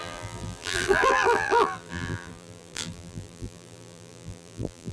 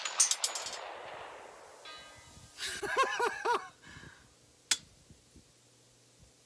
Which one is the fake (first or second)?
first